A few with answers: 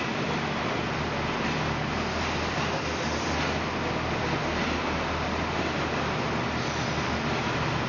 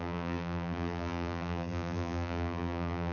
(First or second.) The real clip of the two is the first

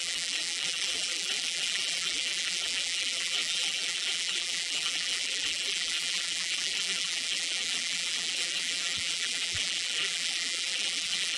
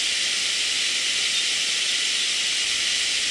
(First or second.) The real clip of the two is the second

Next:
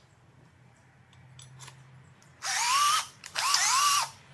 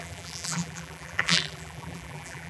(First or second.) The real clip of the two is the first